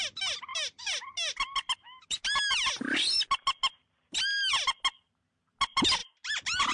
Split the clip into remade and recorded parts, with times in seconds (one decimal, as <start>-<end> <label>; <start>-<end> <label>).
0.0-6.7 recorded